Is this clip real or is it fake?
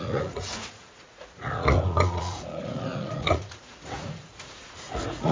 fake